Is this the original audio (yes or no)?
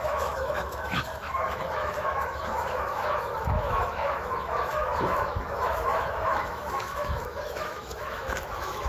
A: no